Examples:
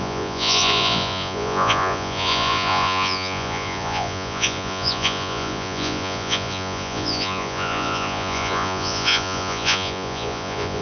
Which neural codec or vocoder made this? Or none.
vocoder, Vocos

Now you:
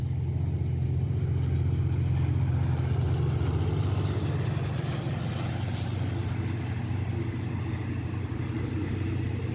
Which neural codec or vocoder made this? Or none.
none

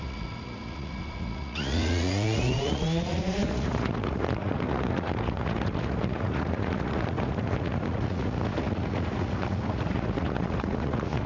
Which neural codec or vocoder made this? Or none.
vocoder, Vocos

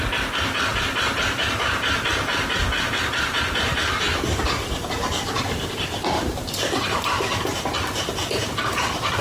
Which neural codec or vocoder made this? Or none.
none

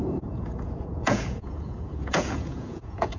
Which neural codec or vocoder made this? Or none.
vocoder, Vocos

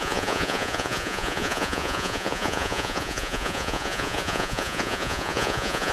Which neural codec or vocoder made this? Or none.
vocoder, Vocos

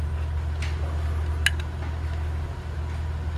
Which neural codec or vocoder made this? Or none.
none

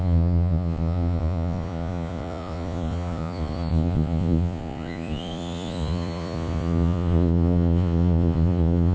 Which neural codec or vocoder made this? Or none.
vocoder, Vocos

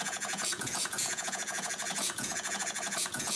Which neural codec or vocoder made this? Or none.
vocoder, Vocos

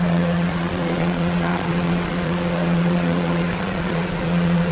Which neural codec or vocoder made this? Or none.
vocoder, Vocos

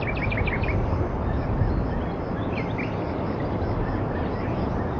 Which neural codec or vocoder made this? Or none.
none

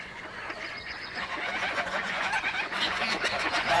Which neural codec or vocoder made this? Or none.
vocoder, Vocos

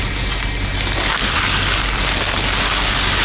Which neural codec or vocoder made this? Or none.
none